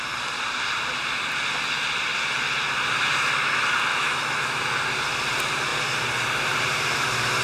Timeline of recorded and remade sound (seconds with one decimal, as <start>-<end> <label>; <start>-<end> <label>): 0.0-3.9 recorded; 3.9-4.6 remade; 4.6-7.4 recorded